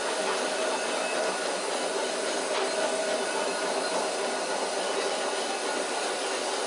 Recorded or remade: recorded